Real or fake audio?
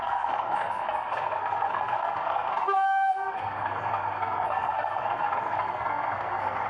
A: fake